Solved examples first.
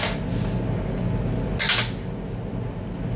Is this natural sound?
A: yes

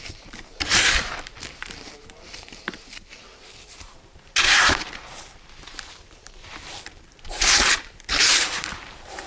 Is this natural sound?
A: no